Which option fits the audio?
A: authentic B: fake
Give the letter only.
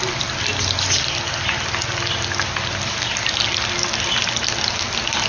A